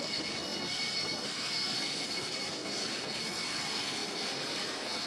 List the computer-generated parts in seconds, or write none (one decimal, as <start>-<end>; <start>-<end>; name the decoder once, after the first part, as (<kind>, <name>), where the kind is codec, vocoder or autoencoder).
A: 0.0-5.1 (codec, SNAC)